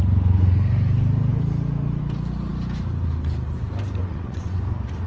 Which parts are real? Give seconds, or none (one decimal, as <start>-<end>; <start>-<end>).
0.0-4.0; 4.6-5.1